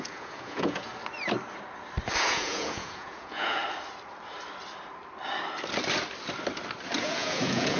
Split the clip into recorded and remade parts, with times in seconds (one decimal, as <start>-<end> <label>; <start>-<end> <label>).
0.0-0.9 remade; 0.9-2.2 recorded; 2.2-3.6 remade; 3.6-7.0 recorded; 7.0-7.8 remade